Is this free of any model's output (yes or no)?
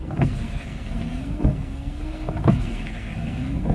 no